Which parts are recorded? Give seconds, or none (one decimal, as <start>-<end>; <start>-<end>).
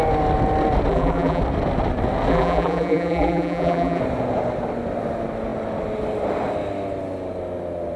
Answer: 0.0-0.9; 1.4-2.3; 4.0-8.0